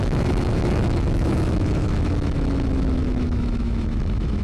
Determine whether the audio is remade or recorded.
remade